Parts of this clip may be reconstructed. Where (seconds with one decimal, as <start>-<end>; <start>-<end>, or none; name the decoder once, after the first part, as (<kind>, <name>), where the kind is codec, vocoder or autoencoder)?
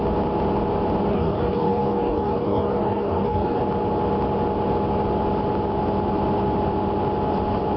1.1-3.6 (codec, DAC)